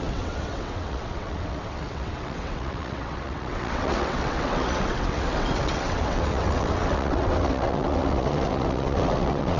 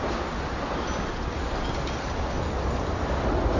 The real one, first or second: second